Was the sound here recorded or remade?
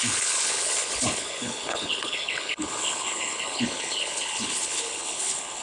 remade